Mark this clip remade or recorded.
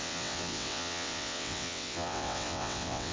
remade